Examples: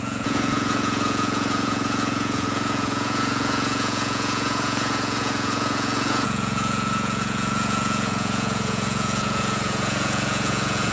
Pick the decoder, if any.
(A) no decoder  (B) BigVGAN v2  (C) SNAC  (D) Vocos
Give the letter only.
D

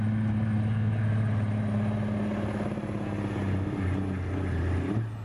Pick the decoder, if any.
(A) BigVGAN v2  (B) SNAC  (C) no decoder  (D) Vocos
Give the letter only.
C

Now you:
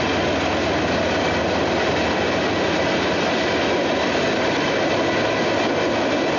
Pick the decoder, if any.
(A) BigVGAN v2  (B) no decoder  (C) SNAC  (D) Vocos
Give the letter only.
B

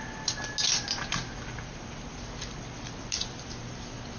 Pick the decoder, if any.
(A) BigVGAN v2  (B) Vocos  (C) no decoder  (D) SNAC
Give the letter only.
C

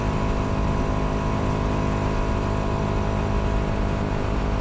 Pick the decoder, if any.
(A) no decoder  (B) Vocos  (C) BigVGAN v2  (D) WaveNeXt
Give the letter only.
A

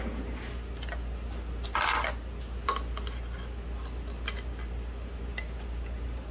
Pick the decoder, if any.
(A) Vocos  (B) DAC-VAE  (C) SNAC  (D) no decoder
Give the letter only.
D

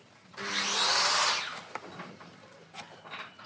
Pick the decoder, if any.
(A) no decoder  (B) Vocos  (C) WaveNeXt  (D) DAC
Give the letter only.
A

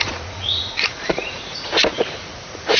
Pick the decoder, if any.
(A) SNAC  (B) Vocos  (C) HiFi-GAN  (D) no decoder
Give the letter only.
B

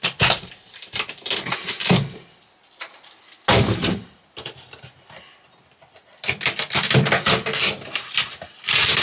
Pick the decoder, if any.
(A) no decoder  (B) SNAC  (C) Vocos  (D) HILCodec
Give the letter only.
A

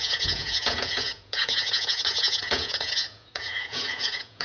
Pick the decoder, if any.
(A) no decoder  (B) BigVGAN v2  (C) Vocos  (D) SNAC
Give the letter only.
C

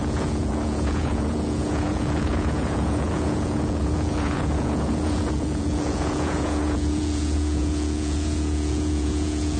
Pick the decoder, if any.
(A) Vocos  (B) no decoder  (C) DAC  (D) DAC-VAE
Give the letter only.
A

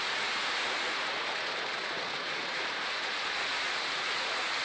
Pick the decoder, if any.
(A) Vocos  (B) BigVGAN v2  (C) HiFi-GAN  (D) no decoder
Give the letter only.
A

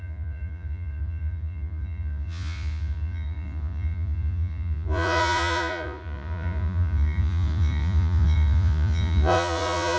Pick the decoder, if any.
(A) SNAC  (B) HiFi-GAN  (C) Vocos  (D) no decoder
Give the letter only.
C